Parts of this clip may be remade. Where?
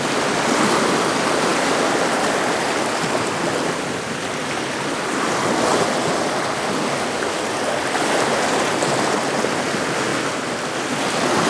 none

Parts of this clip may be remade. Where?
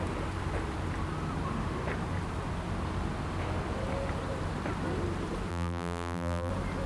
5.5-6.5 (vocoder, BigVGAN v2)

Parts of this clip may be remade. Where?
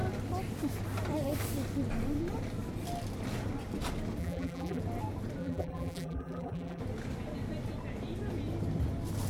4.2-4.8 (vocoder, BigVGAN v2); 5.4-6.8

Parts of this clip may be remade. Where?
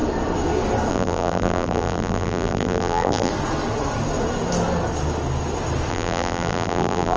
0.9-3.3 (vocoder, BigVGAN v2); 5.9-7.2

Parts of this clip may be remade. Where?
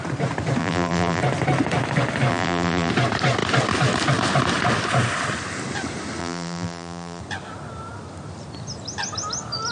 0.6-1.2 (vocoder, BigVGAN v2); 2.3-2.9; 6.2-7.2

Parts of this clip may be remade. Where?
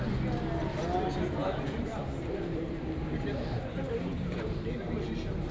1.4-4.7 (vocoder, BigVGAN v2)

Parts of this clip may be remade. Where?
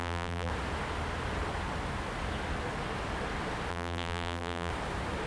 0.0-0.5 (vocoder, BigVGAN v2); 3.7-4.7